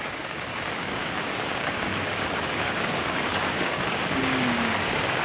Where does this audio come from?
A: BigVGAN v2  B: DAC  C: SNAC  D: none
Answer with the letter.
B